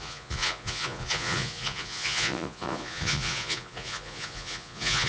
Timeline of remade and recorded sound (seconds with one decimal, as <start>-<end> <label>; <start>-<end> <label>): 0.0-5.1 remade